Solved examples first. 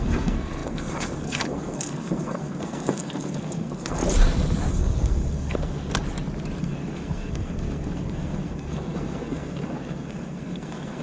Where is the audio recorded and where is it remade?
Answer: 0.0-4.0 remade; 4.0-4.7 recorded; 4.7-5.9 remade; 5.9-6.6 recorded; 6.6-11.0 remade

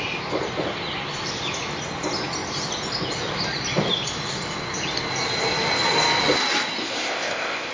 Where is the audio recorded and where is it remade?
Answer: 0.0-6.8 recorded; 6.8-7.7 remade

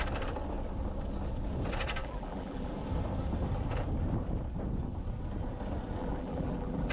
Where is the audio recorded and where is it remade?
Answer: 0.0-2.0 recorded; 2.0-2.7 remade; 2.7-6.0 recorded; 6.0-6.9 remade

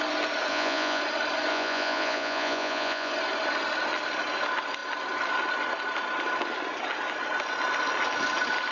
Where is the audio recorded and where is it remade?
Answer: 0.0-0.5 recorded; 0.5-1.0 remade; 1.0-1.5 recorded; 1.5-3.1 remade; 3.1-8.7 recorded

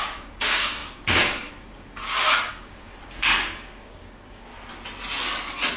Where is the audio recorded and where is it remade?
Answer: 0.0-4.5 remade; 4.5-5.8 recorded

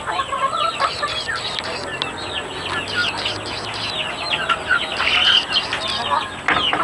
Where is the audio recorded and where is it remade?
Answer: 0.0-6.8 recorded